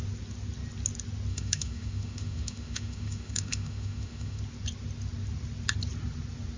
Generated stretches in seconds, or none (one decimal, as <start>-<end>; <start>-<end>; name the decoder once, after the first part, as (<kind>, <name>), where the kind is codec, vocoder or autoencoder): 1.3-4.4 (autoencoder, DAC-VAE)